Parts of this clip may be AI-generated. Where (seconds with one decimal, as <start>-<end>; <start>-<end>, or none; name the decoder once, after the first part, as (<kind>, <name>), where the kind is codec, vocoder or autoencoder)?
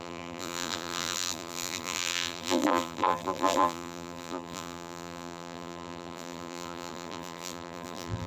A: 0.0-8.3 (vocoder, BigVGAN v2)